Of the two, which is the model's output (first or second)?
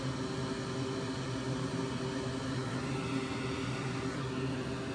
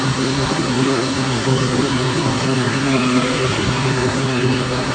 second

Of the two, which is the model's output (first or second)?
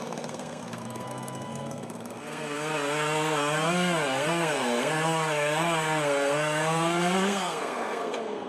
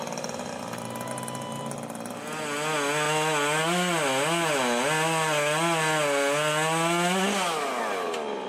first